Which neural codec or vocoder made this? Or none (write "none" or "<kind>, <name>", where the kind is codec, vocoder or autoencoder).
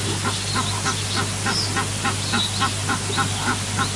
none